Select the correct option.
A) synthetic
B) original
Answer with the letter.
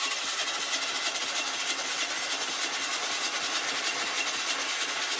B